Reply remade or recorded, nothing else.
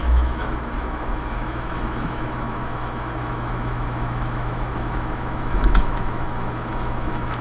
remade